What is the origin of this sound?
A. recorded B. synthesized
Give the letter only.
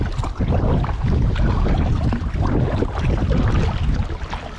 A